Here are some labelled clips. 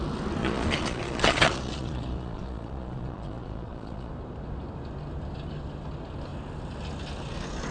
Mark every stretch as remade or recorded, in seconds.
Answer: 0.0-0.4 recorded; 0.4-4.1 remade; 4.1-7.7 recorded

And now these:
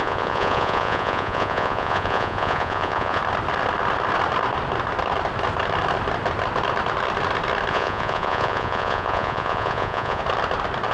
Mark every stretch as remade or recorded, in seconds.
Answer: 0.0-3.2 remade; 3.2-7.7 recorded; 7.7-10.2 remade; 10.2-10.9 recorded